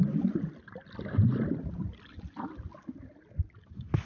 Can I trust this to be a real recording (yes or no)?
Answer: yes